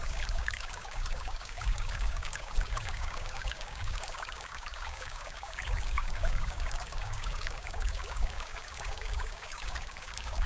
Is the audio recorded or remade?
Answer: remade